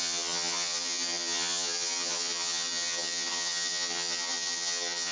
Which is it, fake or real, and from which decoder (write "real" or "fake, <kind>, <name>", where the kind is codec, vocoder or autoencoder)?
fake, vocoder, HiFi-GAN